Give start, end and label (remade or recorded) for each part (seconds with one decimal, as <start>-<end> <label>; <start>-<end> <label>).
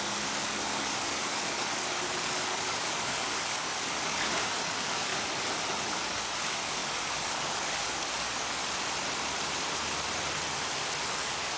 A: 0.0-5.1 remade; 5.1-5.7 recorded; 5.7-8.6 remade; 8.6-11.1 recorded; 11.1-11.6 remade